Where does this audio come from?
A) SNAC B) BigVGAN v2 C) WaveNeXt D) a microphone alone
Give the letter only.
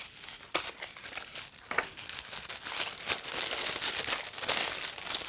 D